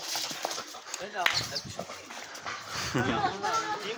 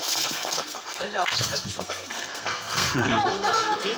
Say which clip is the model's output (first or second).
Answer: second